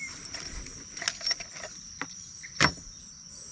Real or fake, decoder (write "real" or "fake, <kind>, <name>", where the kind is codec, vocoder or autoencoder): real